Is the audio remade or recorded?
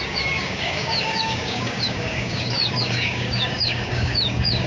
remade